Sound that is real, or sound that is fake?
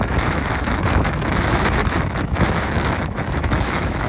fake